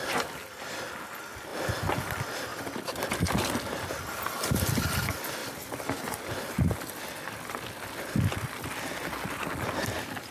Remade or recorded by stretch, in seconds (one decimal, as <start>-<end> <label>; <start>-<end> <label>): 0.0-10.3 recorded